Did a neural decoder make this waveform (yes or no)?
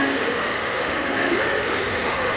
yes